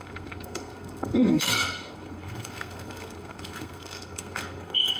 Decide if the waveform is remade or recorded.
remade